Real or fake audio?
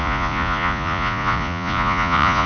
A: fake